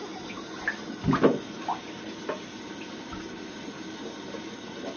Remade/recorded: remade